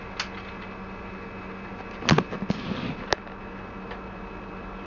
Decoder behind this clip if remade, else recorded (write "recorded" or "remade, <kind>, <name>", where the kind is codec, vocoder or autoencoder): recorded